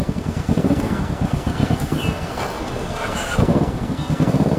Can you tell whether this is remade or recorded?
remade